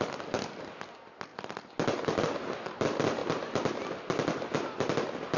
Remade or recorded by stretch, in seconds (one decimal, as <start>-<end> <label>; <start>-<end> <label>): 0.0-5.4 recorded